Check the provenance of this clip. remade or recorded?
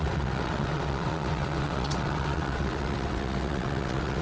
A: remade